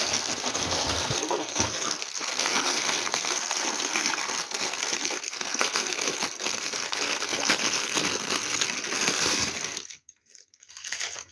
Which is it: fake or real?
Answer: fake